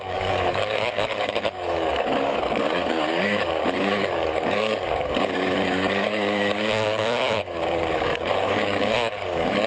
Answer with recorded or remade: remade